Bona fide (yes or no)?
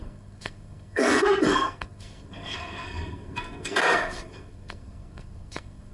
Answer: no